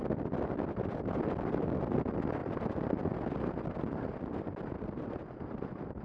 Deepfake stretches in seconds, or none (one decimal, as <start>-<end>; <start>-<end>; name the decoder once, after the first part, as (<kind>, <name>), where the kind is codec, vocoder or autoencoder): none